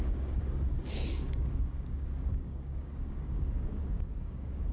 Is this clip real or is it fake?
fake